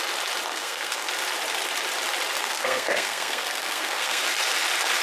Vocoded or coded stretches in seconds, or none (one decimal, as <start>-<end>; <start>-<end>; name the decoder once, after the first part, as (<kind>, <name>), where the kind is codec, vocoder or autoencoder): 0.5-1.1 (codec, SNAC); 2.4-4.2